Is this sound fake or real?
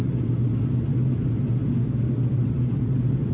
real